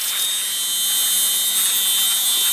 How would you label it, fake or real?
real